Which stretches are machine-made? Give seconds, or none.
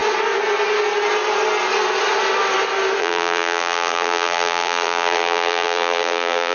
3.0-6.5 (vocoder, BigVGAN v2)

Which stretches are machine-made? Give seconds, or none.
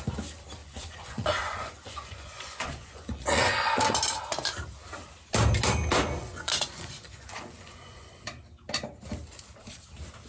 0.6-3.9 (vocoder, Vocos); 6.2-8.1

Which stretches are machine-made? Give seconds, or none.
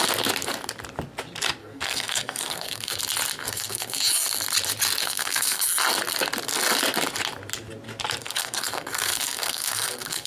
1.6-3.0 (codec, SNAC); 3.4-4.0; 5.0-5.6; 8.2-10.3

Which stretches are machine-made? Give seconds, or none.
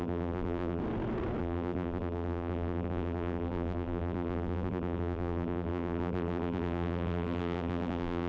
0.0-0.8 (vocoder, BigVGAN v2); 1.4-8.3